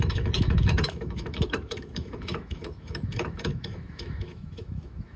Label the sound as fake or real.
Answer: fake